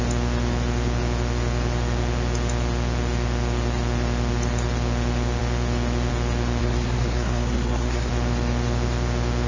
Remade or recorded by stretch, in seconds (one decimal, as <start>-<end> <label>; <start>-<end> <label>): 0.0-6.6 recorded; 6.6-8.1 remade; 8.1-9.5 recorded